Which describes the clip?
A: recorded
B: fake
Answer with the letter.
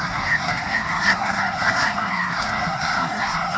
B